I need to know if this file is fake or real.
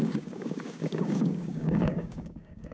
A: fake